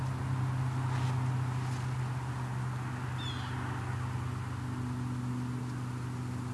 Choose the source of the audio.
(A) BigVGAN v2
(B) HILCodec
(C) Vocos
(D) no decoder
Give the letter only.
D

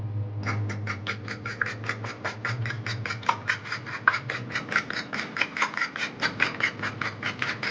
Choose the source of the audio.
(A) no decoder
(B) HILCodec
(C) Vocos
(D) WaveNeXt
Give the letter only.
A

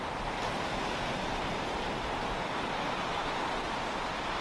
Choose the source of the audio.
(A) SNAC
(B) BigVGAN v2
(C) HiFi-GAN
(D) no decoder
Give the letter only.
D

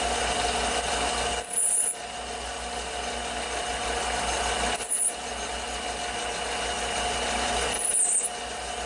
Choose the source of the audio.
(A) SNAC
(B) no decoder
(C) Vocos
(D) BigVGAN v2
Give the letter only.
B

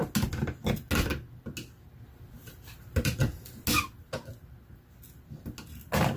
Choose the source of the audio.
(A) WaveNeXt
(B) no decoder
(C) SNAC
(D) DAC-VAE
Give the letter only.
B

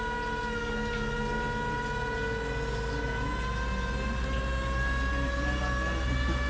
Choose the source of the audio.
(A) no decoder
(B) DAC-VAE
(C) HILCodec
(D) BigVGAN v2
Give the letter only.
A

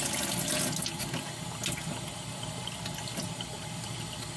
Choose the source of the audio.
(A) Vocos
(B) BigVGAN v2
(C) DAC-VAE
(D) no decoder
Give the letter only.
D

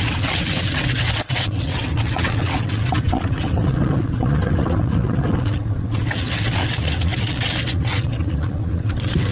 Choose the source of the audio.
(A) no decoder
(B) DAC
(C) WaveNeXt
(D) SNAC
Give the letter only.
C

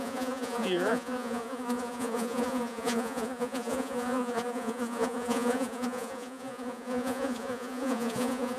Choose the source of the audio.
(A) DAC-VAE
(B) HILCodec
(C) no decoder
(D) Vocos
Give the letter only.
D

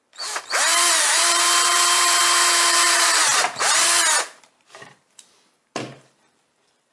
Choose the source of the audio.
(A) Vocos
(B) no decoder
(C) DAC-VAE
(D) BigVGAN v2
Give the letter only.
D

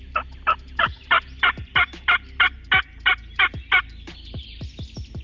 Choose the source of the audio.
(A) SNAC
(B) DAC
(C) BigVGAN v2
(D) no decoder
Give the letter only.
D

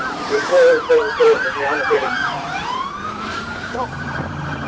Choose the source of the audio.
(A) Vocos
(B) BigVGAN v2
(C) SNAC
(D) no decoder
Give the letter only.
B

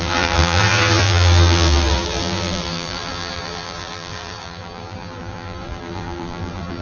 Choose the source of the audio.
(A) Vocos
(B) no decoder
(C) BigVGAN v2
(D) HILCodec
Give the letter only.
C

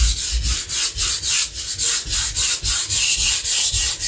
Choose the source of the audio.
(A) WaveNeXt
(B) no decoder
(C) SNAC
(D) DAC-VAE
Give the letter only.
B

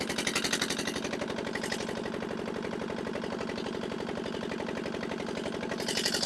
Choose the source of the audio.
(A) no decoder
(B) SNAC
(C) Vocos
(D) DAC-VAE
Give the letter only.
A